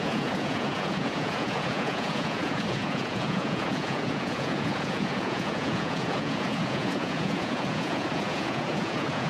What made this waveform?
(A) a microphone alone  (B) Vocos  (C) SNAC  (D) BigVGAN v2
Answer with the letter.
B